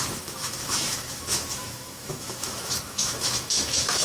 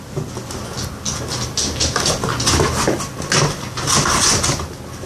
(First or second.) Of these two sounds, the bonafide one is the second